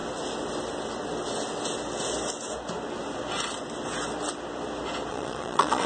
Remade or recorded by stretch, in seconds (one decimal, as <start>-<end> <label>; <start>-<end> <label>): 0.0-5.1 recorded; 5.1-5.9 remade